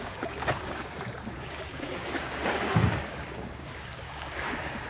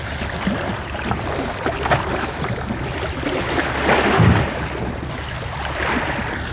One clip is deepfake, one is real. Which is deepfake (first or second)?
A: first